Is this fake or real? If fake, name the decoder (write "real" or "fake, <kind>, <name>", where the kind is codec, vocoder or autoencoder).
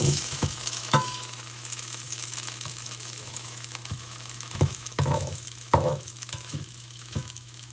fake, autoencoder, DAC-VAE